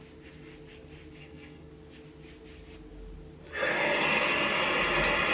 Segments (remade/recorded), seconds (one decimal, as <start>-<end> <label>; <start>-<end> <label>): 0.0-1.2 recorded; 1.2-1.7 remade; 1.7-5.3 recorded

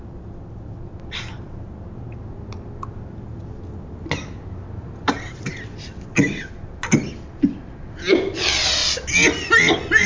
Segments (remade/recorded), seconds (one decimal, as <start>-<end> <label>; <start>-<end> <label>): 0.0-10.1 recorded

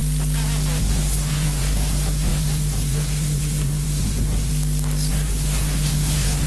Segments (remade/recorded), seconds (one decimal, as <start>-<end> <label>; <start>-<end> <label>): 0.0-0.8 recorded; 0.8-4.5 remade; 4.5-5.1 recorded; 5.1-6.5 remade

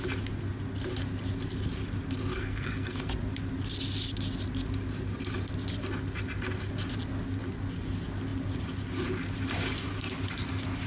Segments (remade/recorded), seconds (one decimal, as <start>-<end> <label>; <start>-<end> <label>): 0.0-2.3 recorded; 2.3-3.1 remade; 3.1-10.9 recorded

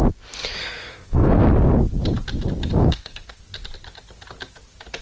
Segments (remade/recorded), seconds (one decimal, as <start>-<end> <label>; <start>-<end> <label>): 0.0-0.6 recorded; 0.6-1.4 remade; 1.4-2.8 recorded; 2.8-3.4 remade; 3.4-5.0 recorded

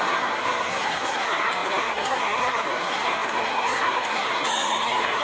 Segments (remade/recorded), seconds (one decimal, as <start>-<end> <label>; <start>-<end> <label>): 0.0-5.2 remade

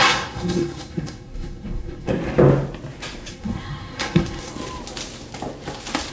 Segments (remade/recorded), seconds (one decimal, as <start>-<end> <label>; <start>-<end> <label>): 0.0-2.1 remade; 2.1-3.3 recorded; 3.3-4.5 remade; 4.5-6.1 recorded